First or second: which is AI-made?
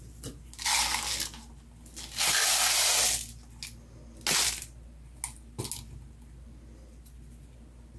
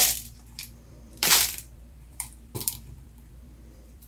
second